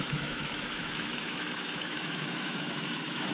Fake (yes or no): yes